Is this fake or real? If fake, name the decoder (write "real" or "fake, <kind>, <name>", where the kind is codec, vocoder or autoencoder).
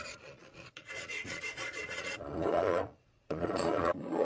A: fake, vocoder, Vocos